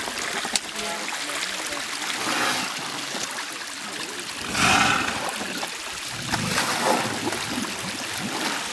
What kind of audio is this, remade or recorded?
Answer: recorded